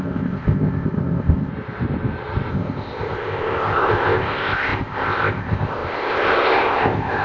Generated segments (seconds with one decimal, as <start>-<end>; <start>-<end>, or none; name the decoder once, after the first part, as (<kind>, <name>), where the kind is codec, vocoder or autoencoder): 0.0-1.5 (codec, ZipCodec); 2.5-7.2